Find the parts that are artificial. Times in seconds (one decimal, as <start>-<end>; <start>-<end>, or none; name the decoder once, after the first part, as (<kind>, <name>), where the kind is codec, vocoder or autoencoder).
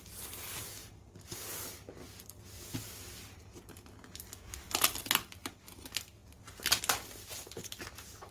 none